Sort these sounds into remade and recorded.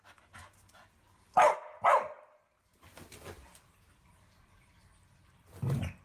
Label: recorded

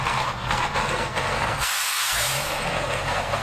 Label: remade